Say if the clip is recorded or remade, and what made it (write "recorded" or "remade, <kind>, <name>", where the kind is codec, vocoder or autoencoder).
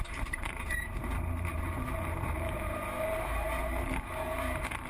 remade, vocoder, BigVGAN v2